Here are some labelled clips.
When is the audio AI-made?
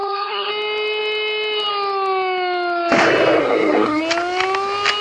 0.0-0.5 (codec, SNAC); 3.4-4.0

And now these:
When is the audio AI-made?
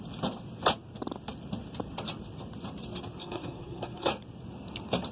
3.2-4.1 (codec, SNAC)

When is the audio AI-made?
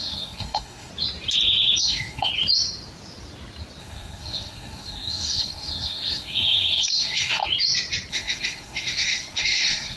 0.0-0.9 (codec, SNAC); 1.8-2.3; 3.8-7.4; 8.1-10.0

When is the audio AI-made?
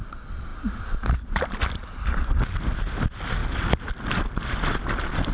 none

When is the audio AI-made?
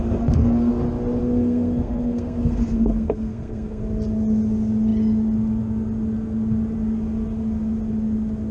0.0-0.7 (codec, SNAC); 1.2-3.8